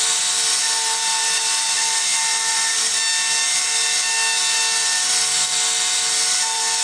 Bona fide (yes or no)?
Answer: yes